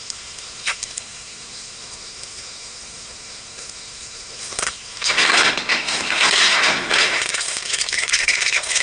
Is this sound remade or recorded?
remade